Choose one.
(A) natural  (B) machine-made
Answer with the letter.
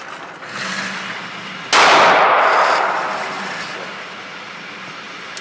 A